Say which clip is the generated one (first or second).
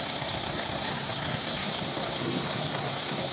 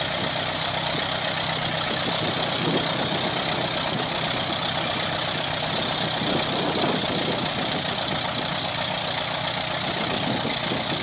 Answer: first